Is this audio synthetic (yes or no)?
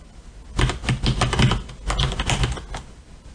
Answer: no